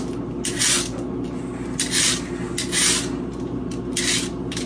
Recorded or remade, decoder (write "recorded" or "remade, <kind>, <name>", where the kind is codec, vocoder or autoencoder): recorded